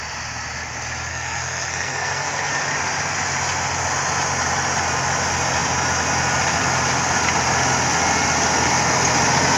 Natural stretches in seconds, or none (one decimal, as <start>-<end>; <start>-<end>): 0.0-1.1; 2.5-9.6